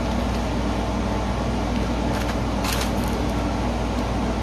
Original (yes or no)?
yes